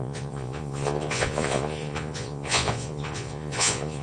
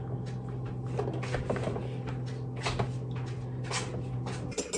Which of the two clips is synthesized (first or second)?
first